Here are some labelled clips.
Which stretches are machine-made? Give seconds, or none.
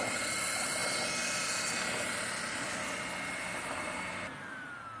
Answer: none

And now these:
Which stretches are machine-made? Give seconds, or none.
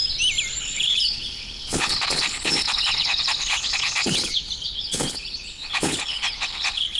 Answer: 0.6-7.0 (codec, HILCodec)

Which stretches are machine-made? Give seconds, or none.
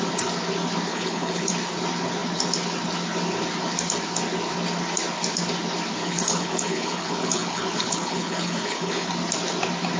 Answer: 0.9-1.5 (codec, HILCodec); 6.0-9.1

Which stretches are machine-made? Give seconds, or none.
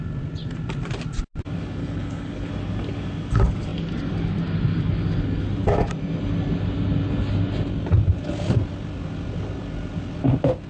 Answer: 1.8-2.5 (codec, HILCodec)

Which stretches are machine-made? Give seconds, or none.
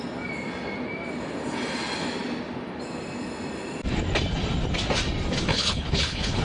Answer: 5.5-6.4 (codec, HILCodec)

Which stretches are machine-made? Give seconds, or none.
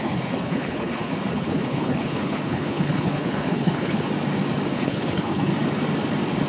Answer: 0.0-4.1 (codec, HILCodec); 4.7-5.5